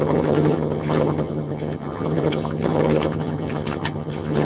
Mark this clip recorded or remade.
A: remade